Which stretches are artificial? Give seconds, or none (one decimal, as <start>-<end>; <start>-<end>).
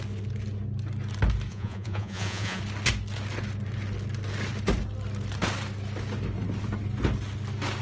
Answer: 1.5-2.6